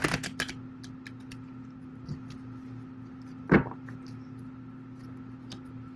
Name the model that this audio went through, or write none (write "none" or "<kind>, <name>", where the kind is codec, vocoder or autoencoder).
none